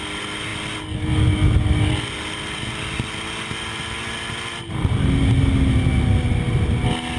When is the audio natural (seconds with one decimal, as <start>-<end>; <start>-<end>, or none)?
0.0-7.2